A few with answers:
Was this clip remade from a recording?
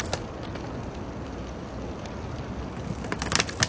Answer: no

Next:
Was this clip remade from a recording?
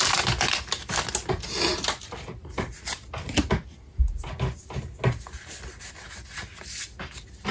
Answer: no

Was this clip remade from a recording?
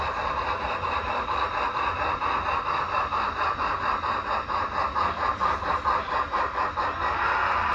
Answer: no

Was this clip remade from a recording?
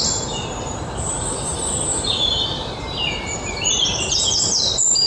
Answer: yes